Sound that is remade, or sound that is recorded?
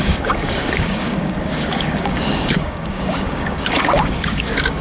remade